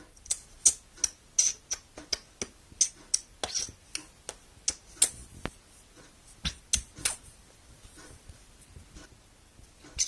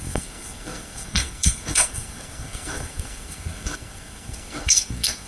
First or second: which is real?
first